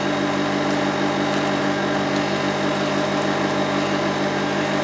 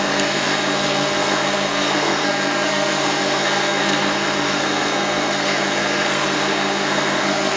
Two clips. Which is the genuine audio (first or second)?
first